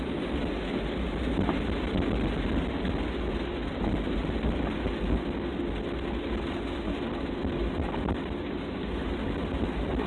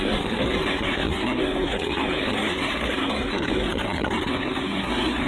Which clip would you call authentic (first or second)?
first